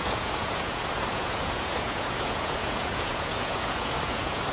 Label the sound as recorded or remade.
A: remade